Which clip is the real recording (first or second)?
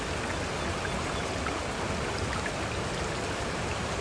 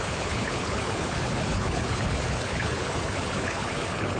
first